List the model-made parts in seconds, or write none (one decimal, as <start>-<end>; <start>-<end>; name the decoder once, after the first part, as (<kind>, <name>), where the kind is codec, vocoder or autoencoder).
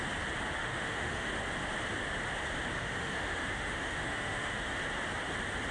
0.6-1.3 (autoencoder, DAC-VAE); 2.8-4.7